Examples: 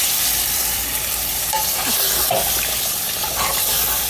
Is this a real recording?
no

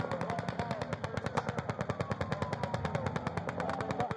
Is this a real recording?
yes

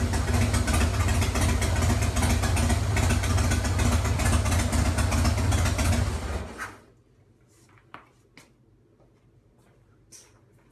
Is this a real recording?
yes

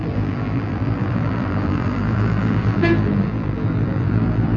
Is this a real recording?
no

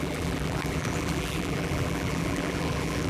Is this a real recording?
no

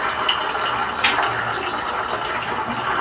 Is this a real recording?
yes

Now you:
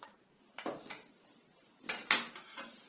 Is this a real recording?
no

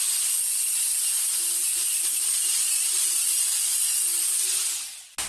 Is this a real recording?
no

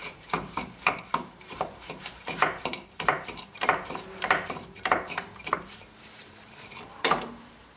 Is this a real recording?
no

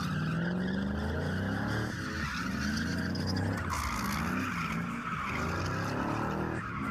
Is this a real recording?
yes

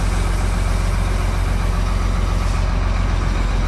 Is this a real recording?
yes